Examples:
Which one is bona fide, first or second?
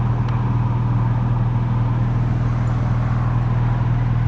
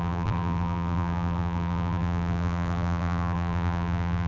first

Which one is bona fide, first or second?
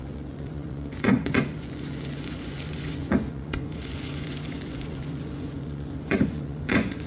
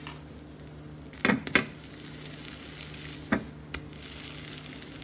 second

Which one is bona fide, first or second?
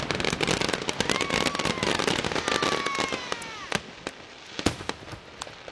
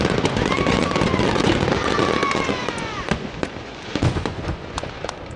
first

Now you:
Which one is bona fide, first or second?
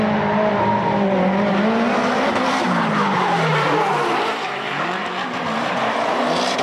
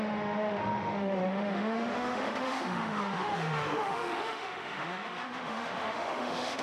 first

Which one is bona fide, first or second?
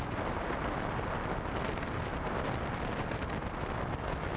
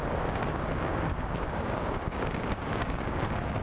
first